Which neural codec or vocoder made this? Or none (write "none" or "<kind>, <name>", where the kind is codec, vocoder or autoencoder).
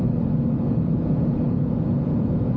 vocoder, Vocos